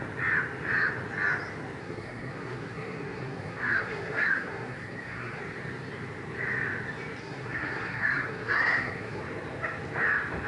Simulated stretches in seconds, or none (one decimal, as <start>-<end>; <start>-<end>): 1.8-5.4; 7.2-9.2